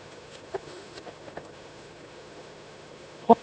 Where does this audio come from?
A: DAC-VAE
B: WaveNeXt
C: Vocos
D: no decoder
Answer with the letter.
A